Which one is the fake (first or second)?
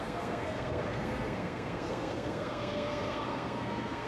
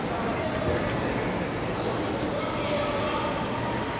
first